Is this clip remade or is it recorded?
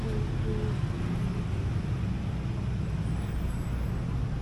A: recorded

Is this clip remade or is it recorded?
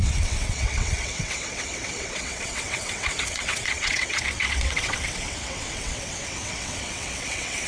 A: remade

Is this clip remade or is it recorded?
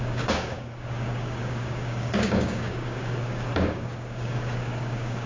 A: remade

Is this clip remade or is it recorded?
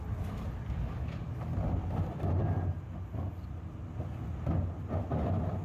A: recorded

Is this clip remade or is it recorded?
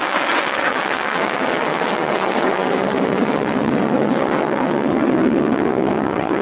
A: remade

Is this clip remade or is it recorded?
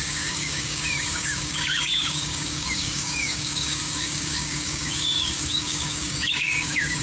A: remade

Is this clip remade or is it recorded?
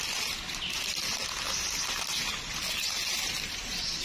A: recorded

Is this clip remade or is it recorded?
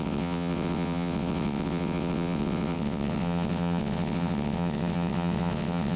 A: remade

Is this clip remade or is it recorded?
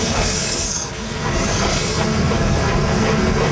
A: remade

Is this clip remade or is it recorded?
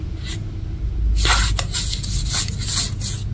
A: recorded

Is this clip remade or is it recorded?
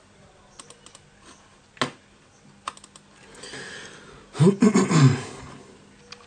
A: recorded